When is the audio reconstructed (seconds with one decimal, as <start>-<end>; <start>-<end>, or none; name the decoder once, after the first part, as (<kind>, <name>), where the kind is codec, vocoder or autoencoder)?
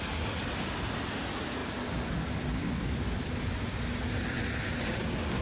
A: none